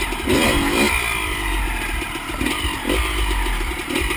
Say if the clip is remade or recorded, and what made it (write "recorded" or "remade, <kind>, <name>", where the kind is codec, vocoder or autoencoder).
recorded